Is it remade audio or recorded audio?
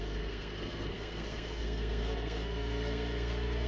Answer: remade